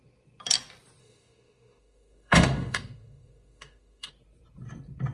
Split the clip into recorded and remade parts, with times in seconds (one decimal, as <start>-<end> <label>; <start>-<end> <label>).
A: 0.0-1.0 recorded; 1.0-4.1 remade; 4.1-5.1 recorded